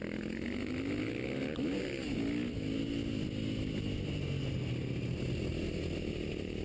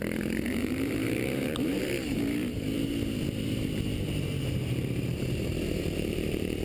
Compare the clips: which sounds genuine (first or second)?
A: first